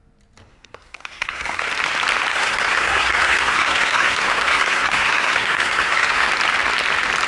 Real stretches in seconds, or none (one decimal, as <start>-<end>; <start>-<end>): 0.0-0.5; 1.7-2.3; 6.3-7.3